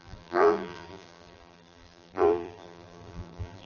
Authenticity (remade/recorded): remade